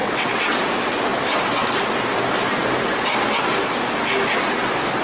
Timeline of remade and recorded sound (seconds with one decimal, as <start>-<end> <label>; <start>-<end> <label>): 0.0-0.6 remade; 0.6-5.0 recorded